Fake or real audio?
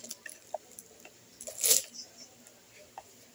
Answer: real